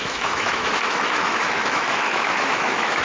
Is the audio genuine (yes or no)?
no